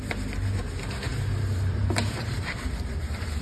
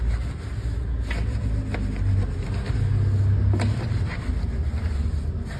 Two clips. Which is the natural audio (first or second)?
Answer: second